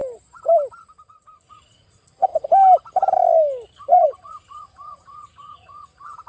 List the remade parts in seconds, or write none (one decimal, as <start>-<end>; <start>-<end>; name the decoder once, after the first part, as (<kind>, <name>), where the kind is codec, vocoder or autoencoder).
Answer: 0.8-2.3 (vocoder, Vocos); 3.8-6.3